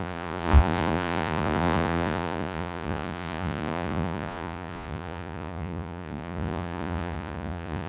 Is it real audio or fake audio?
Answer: fake